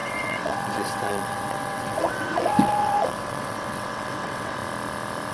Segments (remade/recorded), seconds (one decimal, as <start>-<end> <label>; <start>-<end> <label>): 0.0-4.6 remade; 4.6-5.3 recorded